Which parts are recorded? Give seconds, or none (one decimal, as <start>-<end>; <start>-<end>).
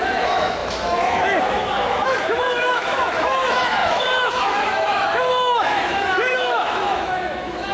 none